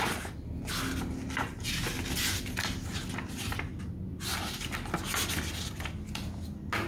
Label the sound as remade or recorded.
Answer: recorded